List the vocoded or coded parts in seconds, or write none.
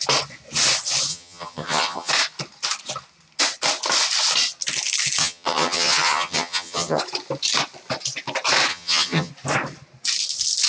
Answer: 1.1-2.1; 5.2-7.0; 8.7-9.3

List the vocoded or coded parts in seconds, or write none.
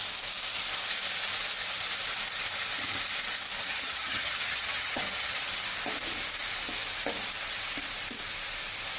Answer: 3.7-5.5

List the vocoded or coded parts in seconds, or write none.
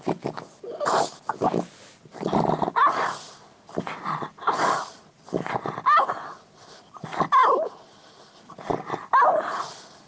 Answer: none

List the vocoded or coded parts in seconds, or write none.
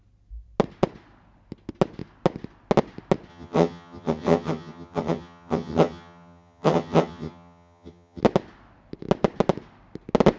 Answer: 3.3-8.2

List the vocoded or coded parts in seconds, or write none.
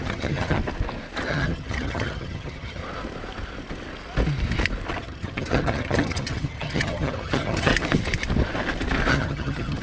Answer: 0.0-0.6; 1.3-2.8; 5.0-7.7; 9.1-9.8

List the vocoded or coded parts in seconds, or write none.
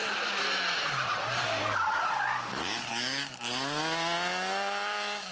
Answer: none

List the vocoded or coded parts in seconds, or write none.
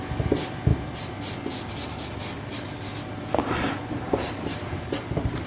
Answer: none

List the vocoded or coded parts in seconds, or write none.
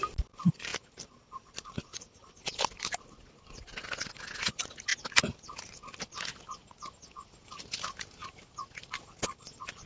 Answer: none